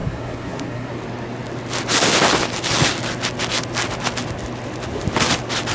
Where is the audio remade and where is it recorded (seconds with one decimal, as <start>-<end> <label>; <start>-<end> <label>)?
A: 0.0-0.9 remade; 0.9-5.7 recorded